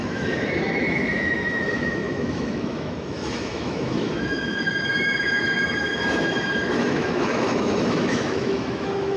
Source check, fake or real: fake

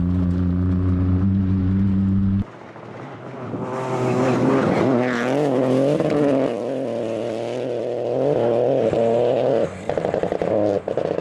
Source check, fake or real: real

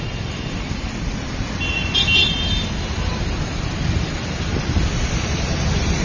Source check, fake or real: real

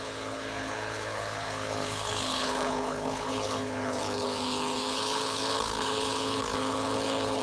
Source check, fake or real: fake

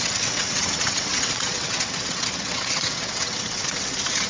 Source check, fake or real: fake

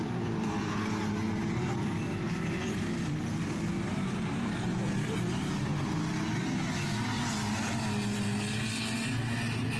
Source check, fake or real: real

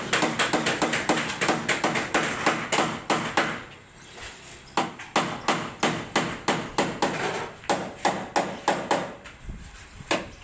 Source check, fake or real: real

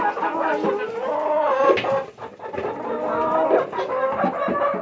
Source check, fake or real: real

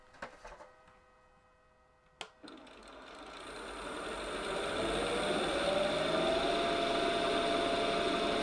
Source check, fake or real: real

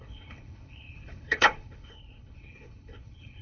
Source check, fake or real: fake